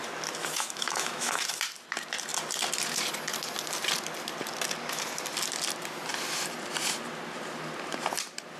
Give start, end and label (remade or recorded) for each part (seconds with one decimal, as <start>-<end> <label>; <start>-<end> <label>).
0.0-0.4 recorded; 0.4-1.4 remade; 1.4-8.6 recorded